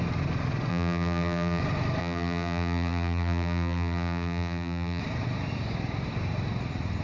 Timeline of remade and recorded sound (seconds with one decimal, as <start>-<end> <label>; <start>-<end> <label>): 0.0-0.7 recorded; 0.7-1.6 remade; 1.6-2.0 recorded; 2.0-5.0 remade; 5.0-7.0 recorded